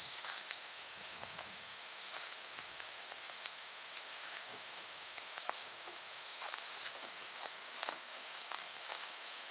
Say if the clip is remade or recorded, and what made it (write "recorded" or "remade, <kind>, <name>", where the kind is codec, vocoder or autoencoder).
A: remade, autoencoder, DAC-VAE